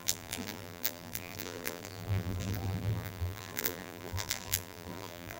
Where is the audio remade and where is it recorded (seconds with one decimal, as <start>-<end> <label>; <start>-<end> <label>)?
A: 0.0-5.4 remade